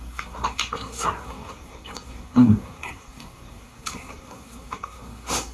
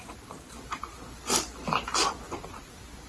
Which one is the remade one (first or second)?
first